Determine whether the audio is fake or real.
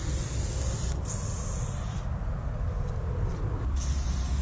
real